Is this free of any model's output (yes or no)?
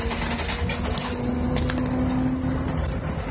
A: yes